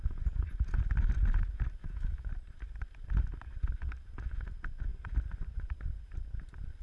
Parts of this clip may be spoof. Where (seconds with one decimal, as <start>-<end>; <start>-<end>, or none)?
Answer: 1.8-2.3